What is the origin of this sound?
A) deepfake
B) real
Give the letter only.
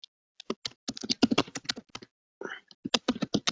B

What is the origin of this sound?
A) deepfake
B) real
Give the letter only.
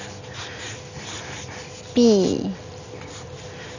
B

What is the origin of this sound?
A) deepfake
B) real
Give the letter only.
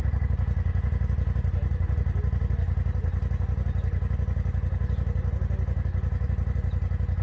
B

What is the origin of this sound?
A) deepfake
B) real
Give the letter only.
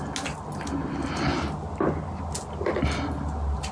B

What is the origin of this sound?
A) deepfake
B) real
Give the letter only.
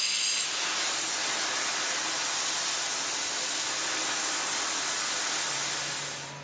B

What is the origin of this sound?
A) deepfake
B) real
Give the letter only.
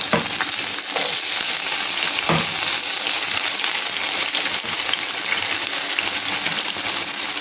B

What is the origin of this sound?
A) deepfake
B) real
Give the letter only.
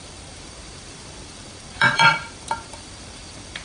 A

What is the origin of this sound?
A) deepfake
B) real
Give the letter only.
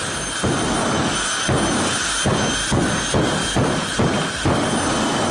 B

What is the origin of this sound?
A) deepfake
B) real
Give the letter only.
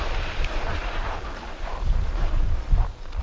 A